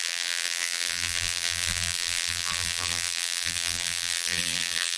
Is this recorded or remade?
remade